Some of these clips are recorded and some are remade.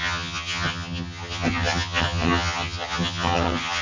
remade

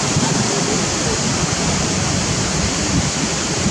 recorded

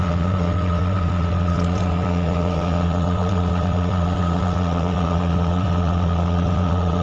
remade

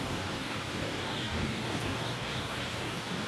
remade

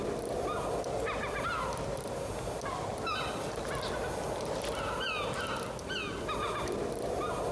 recorded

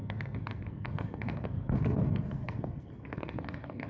remade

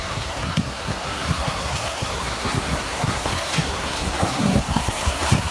remade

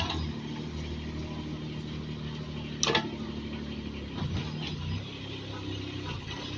recorded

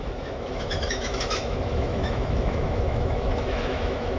remade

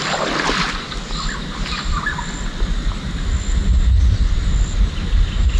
recorded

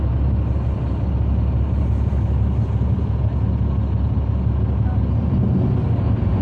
recorded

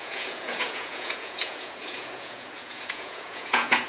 remade